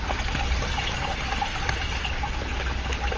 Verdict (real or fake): real